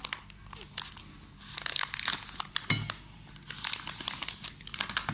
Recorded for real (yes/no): yes